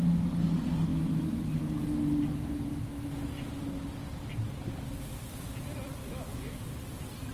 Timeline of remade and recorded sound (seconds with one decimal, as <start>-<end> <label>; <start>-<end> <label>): 0.0-0.9 recorded; 0.9-1.4 remade; 1.4-6.0 recorded; 6.0-6.6 remade; 6.6-7.3 recorded